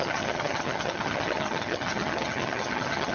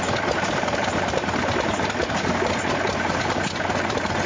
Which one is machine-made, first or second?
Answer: first